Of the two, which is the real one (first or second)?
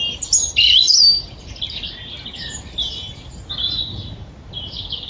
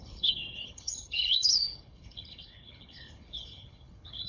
first